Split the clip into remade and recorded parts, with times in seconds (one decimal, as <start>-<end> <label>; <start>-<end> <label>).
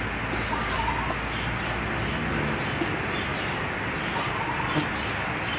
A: 0.0-5.6 recorded